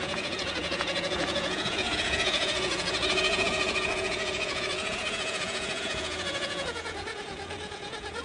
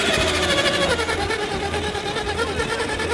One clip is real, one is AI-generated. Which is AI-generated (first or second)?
first